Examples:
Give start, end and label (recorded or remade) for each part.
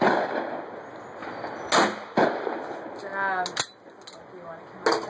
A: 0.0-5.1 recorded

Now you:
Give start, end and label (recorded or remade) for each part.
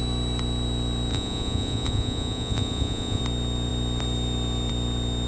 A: 0.0-1.1 recorded; 1.1-3.2 remade; 3.2-5.3 recorded